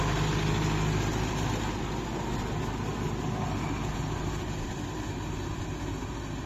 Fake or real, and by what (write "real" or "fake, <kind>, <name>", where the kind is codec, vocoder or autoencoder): real